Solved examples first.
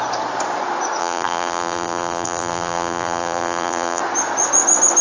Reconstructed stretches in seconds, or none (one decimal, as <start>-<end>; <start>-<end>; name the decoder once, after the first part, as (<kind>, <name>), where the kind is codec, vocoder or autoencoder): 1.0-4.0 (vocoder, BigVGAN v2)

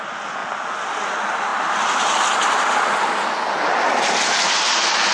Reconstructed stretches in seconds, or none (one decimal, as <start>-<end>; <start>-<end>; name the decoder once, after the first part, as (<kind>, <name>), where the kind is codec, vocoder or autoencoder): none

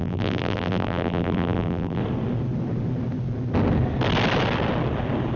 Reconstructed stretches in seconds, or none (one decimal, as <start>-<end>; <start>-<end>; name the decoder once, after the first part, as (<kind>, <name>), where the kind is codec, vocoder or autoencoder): 0.0-2.0 (vocoder, BigVGAN v2)

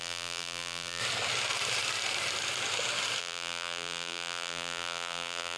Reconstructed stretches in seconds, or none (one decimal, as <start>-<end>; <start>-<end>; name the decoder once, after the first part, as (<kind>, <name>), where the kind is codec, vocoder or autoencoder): 0.0-1.0 (vocoder, BigVGAN v2); 3.2-5.6

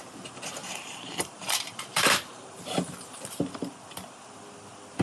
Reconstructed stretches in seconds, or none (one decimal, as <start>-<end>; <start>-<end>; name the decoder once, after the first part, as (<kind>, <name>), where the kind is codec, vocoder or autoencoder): 0.6-3.4 (vocoder, BigVGAN v2)

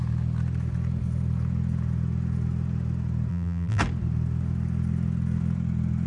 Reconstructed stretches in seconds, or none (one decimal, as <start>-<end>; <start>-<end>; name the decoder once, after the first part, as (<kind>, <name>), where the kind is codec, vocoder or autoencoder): 3.3-3.8 (vocoder, BigVGAN v2)

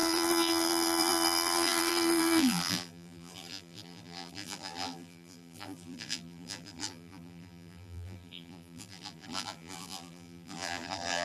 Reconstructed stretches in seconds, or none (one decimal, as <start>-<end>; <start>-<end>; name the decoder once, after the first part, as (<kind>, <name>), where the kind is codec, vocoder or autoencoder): 0.0-11.2 (vocoder, BigVGAN v2)